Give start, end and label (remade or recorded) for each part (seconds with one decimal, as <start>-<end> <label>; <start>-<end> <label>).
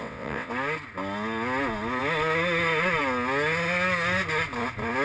0.0-0.5 remade; 0.5-5.0 recorded